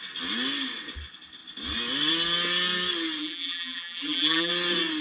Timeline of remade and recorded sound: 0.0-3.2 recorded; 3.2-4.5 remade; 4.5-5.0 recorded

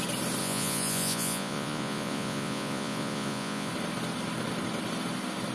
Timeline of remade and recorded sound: 0.0-0.4 recorded; 0.4-3.7 remade; 3.7-5.5 recorded